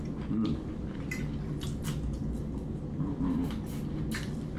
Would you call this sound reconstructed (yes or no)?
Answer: no